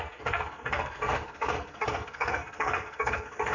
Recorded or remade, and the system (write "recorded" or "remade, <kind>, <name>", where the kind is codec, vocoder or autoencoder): remade, codec, SNAC